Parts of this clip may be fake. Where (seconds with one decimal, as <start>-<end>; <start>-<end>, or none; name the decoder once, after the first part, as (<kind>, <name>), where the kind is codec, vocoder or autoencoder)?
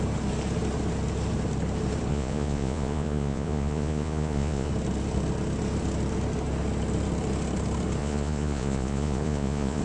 2.1-4.7 (vocoder, Vocos); 8.0-9.8